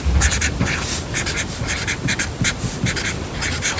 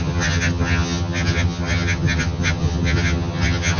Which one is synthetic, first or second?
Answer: second